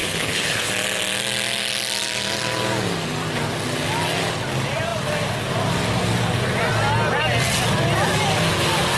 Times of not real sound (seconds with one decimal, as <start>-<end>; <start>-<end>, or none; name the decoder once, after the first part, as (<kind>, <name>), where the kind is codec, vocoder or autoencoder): 0.0-0.7 (codec, HILCodec)